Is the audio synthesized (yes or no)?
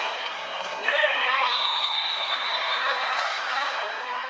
yes